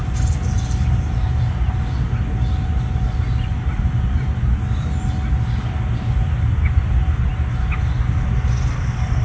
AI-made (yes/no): no